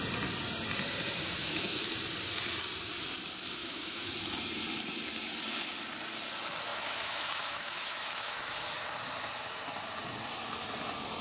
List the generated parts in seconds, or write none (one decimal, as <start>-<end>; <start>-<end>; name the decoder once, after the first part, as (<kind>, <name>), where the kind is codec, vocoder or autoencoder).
1.4-1.9 (autoencoder, DAC-VAE); 3.6-4.1; 6.7-8.5